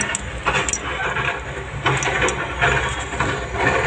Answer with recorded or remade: recorded